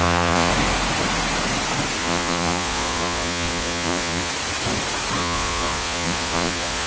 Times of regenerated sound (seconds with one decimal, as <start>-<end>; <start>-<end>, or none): 0.0-0.5; 2.0-4.3; 5.2-6.9